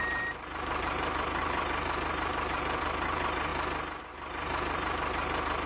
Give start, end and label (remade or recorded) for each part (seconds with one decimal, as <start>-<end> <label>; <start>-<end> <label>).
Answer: 0.0-3.5 remade; 3.5-4.0 recorded; 4.0-5.7 remade